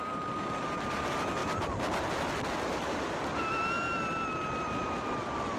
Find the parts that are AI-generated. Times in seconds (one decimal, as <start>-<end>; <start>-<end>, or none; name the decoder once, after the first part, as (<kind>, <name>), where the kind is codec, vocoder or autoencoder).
0.0-3.6 (vocoder, BigVGAN v2); 4.3-5.6

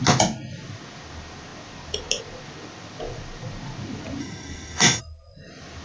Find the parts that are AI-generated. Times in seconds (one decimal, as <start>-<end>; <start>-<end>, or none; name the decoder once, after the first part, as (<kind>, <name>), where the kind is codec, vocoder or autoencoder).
4.2-5.0 (codec, SNAC)

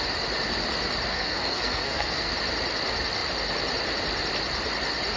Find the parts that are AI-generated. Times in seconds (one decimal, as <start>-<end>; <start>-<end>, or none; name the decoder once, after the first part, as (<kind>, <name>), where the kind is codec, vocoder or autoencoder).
1.1-2.3 (codec, SNAC)